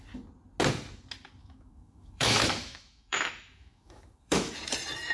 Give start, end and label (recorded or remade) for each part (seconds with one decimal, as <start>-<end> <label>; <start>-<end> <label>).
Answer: 0.0-1.4 recorded; 1.4-4.5 remade; 4.5-5.1 recorded